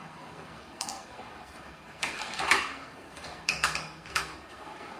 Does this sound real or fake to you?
fake